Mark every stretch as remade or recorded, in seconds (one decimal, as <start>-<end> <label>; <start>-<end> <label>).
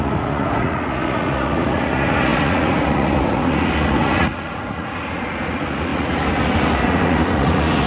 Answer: 0.0-7.9 remade